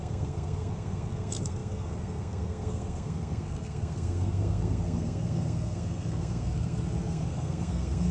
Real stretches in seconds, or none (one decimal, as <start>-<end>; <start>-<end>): none